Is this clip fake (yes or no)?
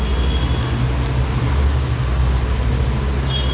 no